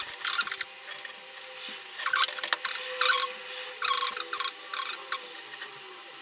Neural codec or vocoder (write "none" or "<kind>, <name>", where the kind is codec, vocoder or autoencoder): none